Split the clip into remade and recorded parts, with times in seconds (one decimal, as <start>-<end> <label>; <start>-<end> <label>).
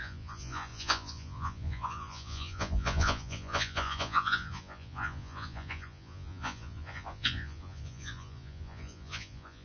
0.0-9.6 remade